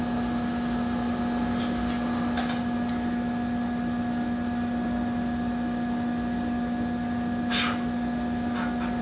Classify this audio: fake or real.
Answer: real